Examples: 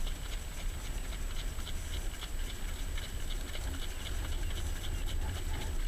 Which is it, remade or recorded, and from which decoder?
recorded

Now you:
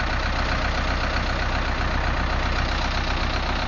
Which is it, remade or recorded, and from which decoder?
recorded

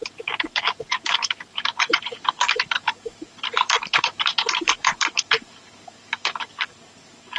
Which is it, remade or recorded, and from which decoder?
remade, codec, DAC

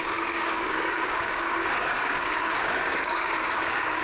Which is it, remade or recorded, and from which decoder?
remade, codec, DAC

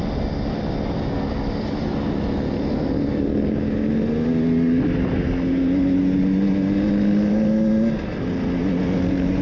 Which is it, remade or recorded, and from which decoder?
recorded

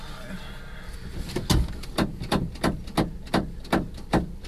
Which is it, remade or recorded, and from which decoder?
recorded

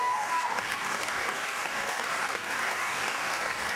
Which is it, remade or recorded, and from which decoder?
remade, codec, DAC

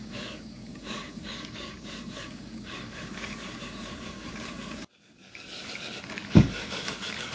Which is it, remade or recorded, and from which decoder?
remade, codec, DAC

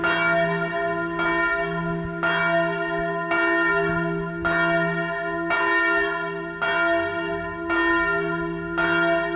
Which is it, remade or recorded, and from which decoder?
recorded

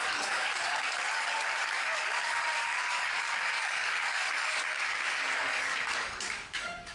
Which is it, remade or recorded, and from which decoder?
remade, codec, DAC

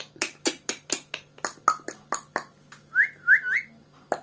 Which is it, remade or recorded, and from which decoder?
recorded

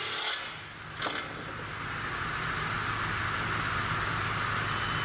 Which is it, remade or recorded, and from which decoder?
recorded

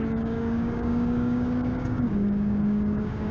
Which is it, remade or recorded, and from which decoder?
remade, codec, DAC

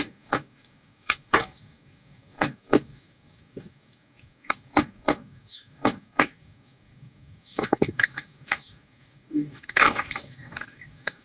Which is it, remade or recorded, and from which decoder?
remade, codec, DAC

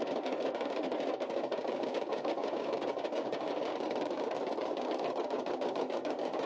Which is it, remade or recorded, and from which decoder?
remade, codec, DAC